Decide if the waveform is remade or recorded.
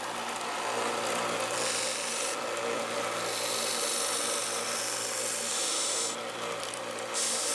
recorded